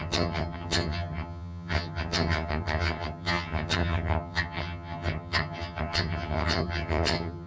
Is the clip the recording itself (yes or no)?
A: no